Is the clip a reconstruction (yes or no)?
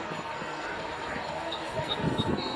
yes